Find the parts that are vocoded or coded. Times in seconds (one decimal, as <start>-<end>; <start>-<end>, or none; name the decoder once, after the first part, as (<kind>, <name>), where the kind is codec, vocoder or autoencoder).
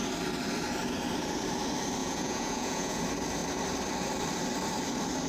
2.0-3.0 (vocoder, Vocos)